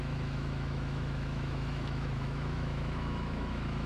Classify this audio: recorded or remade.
remade